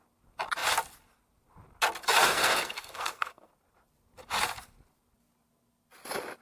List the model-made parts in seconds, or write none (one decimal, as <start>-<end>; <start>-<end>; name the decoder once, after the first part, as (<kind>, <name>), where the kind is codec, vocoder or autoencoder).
2.0-3.5 (codec, SNAC)